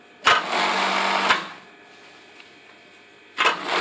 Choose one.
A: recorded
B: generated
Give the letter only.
A